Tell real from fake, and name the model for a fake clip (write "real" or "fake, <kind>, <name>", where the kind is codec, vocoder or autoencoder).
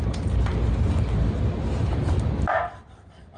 real